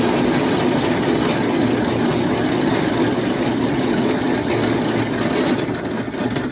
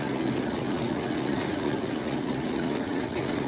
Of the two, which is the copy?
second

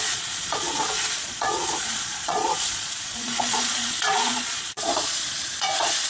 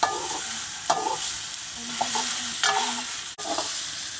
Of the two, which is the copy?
first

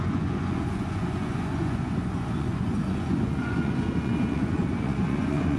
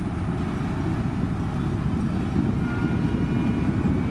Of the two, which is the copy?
first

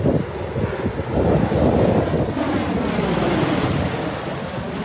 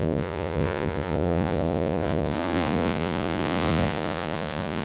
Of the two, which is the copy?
second